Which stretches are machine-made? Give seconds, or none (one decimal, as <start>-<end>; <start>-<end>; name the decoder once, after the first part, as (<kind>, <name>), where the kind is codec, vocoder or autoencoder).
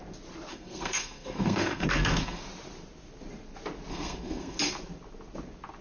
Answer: 0.5-2.4 (codec, SNAC); 3.9-4.6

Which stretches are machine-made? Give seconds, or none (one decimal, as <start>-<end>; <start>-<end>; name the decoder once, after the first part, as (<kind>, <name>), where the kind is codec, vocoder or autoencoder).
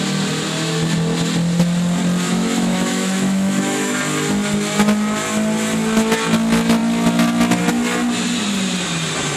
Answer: 2.3-4.0 (autoencoder, DAC-VAE)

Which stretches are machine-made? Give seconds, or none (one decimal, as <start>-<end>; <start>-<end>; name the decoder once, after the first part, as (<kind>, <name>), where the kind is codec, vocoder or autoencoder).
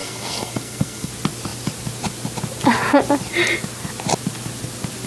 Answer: 0.0-1.1 (codec, SNAC)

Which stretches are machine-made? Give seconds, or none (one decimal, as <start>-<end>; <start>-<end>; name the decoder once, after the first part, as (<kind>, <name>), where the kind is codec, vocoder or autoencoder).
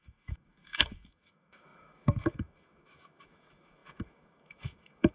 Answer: 0.0-5.1 (autoencoder, DAC-VAE)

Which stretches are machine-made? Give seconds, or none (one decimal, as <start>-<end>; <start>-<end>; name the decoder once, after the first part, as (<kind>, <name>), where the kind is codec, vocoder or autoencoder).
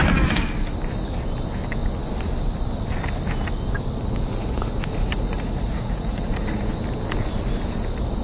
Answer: 4.4-6.6 (vocoder, Vocos)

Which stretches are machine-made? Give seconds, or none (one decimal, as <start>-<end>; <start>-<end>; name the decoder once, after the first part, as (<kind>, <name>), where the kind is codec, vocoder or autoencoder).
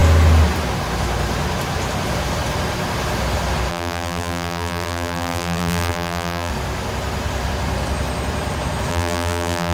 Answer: 3.7-6.5 (vocoder, BigVGAN v2); 8.9-9.7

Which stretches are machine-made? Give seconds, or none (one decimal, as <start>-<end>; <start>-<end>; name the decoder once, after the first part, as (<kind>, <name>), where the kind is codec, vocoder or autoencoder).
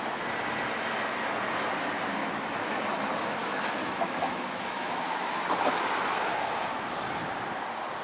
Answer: 2.2-2.8 (autoencoder, DAC-VAE); 3.4-5.3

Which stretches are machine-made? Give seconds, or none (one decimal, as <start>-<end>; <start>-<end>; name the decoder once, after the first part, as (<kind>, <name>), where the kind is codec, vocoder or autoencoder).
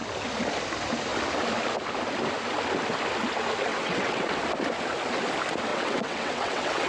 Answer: 3.7-4.4 (vocoder, WaveNeXt); 5.7-6.9